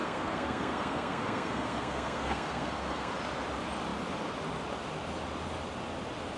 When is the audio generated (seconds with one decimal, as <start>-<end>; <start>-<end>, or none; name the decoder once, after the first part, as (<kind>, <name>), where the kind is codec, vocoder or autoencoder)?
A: 0.0-3.1 (codec, SNAC)